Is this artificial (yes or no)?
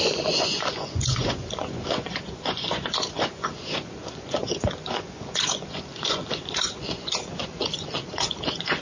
yes